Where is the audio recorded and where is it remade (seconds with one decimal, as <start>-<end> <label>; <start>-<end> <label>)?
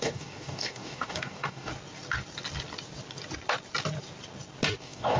0.0-1.7 remade; 1.7-4.8 recorded; 4.8-5.2 remade